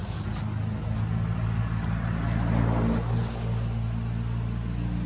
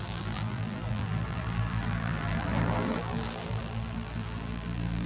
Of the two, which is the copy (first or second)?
second